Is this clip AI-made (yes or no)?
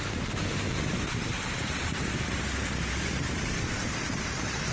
yes